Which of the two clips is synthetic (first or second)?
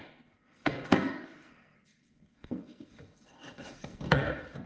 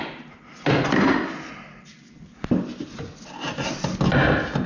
first